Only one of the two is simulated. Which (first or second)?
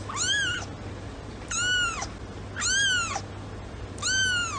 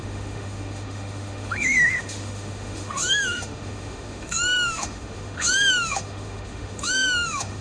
second